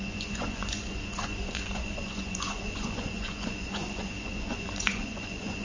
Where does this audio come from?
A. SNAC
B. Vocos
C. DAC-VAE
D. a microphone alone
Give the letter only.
B